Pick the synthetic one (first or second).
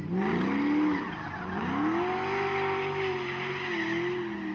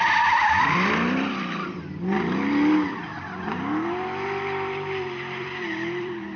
second